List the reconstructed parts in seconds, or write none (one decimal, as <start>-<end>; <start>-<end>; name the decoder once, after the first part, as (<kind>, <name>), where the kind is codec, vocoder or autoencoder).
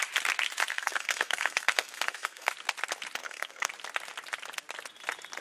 0.7-2.5 (codec, SNAC); 3.2-3.7